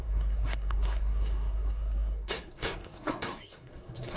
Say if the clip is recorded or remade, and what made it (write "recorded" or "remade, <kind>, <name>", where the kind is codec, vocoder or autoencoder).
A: remade, codec, SNAC